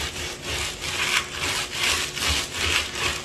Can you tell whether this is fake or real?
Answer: real